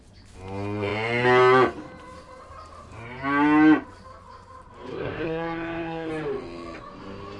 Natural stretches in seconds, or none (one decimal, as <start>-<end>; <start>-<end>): 0.0-4.9; 6.1-7.4